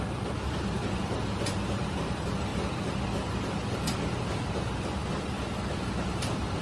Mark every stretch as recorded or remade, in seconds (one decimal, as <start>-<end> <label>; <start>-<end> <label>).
0.0-6.6 recorded